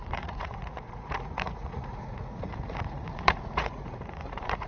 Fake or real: fake